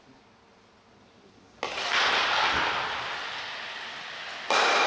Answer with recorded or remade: recorded